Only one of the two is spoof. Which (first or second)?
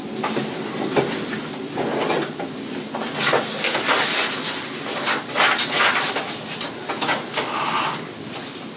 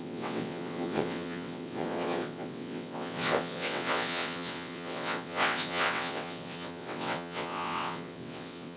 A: second